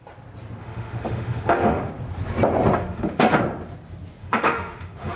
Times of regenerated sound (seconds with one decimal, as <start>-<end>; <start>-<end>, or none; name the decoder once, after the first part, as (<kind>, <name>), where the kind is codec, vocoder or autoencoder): 0.6-1.9 (autoencoder, DAC-VAE); 2.8-3.4; 4.2-5.2